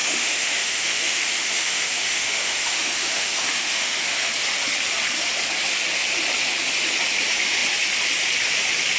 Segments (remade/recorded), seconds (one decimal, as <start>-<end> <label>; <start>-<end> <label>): 0.0-4.3 remade; 4.3-9.0 recorded